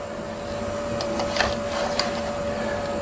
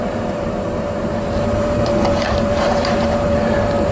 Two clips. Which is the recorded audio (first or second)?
first